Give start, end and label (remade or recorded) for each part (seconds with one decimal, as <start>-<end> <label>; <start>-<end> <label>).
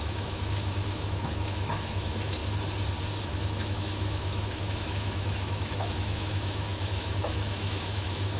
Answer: 0.0-2.4 remade; 2.4-3.2 recorded; 3.2-8.4 remade